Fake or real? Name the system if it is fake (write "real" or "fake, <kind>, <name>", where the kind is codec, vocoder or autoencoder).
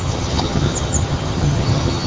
fake, vocoder, HiFi-GAN